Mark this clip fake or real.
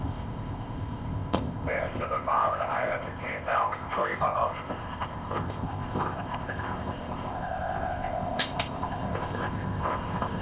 fake